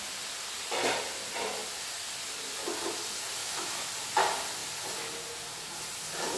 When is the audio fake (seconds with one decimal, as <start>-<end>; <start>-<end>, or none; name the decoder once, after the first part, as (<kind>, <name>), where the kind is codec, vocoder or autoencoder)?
3.4-3.9 (autoencoder, DAC-VAE)